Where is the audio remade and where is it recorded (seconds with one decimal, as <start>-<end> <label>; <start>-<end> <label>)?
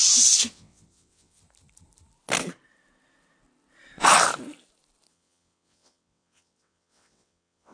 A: 0.0-0.5 recorded; 0.5-1.4 remade; 1.4-5.1 recorded; 5.1-7.7 remade